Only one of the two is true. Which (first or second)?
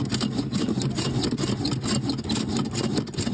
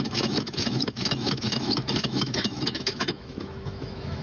first